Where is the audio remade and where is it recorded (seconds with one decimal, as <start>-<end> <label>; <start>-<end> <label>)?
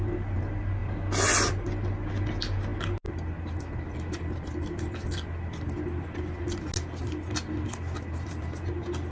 0.0-9.1 recorded